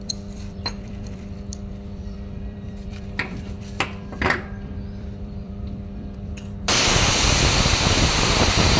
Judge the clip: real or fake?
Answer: fake